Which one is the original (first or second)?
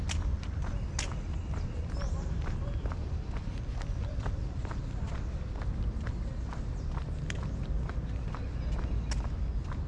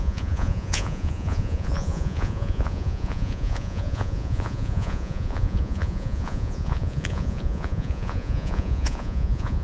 first